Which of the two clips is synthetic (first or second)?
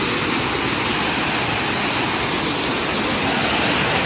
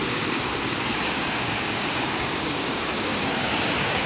second